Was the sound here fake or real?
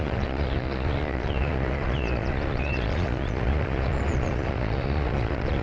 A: fake